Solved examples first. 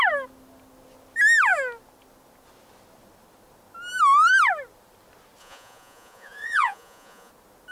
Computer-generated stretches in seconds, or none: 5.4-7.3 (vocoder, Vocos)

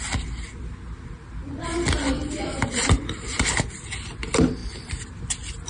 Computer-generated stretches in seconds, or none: 4.6-5.2 (vocoder, BigVGAN v2)

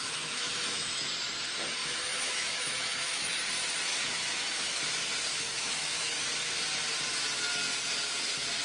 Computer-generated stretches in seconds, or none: 0.0-1.1 (autoencoder, DAC-VAE); 1.8-3.4; 3.9-4.8; 5.3-6.2